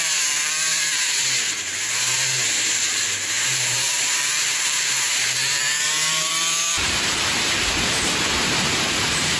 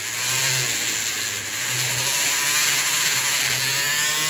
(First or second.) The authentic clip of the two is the second